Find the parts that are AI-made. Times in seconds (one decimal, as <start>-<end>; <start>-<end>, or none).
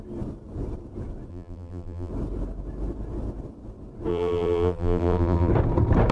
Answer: 1.3-2.1; 4.1-5.5